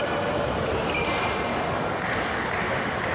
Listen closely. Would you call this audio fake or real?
real